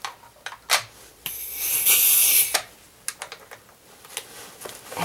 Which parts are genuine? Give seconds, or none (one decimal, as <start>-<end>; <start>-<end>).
0.0-1.1; 1.7-5.0